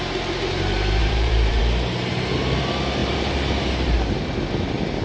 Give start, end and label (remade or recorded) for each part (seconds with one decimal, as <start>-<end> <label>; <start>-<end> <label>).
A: 0.0-1.0 recorded; 1.0-1.6 remade; 1.6-3.0 recorded; 3.0-4.2 remade; 4.2-5.0 recorded